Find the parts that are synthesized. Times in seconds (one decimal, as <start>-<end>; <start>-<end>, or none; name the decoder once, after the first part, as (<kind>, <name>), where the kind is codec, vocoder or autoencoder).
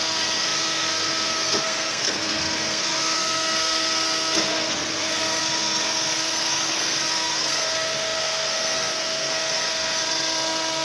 0.0-10.8 (codec, SNAC)